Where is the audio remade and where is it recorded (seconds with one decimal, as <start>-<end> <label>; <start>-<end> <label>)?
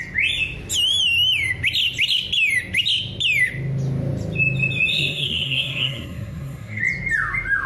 0.0-4.9 recorded; 4.9-6.8 remade; 6.8-7.7 recorded